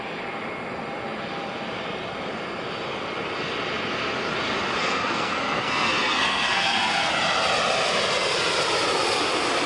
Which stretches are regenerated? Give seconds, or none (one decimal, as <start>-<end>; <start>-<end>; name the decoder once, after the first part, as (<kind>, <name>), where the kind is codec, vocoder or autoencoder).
4.8-7.1 (codec, SNAC)